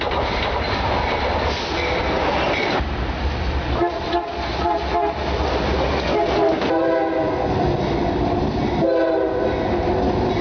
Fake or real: real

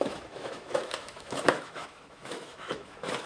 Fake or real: fake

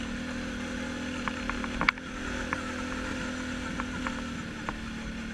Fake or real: real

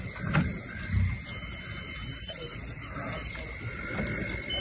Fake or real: real